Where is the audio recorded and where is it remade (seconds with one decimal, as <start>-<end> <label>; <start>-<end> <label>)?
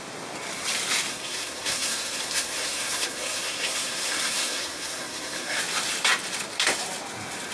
0.0-1.1 recorded; 1.1-5.6 remade; 5.6-7.5 recorded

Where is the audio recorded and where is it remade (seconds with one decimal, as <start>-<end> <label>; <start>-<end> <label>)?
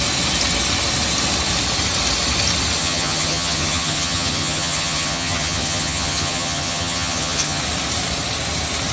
0.0-2.8 recorded; 2.8-7.6 remade; 7.6-8.9 recorded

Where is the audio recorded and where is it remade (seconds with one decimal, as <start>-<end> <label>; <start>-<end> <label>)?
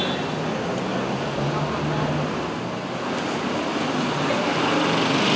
0.0-5.4 recorded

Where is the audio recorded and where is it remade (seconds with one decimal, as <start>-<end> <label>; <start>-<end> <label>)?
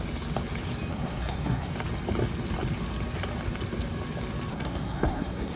0.0-0.9 recorded; 0.9-1.7 remade; 1.7-4.5 recorded; 4.5-5.6 remade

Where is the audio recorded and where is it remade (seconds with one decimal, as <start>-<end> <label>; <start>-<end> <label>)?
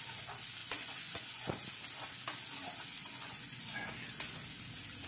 0.0-0.6 recorded; 0.6-1.5 remade; 1.5-3.0 recorded; 3.0-3.9 remade; 3.9-5.1 recorded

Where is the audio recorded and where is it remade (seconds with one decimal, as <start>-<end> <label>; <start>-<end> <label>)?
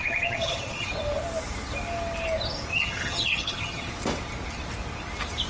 0.0-0.9 remade; 0.9-2.7 recorded; 2.7-3.9 remade; 3.9-5.5 recorded